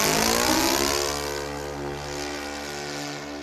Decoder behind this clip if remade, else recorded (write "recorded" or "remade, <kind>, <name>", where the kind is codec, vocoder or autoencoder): recorded